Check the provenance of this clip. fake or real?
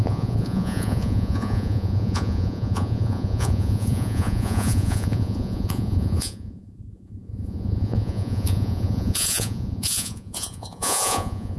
fake